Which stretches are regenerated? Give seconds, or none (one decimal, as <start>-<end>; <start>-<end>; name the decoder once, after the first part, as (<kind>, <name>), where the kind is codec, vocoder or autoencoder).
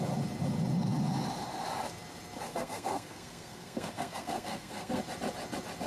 2.5-5.0 (codec, SNAC)